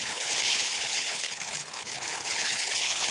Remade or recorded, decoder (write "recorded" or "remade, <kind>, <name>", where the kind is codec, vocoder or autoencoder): remade, codec, HILCodec